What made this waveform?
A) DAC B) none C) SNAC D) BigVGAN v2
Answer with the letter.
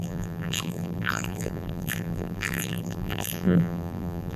D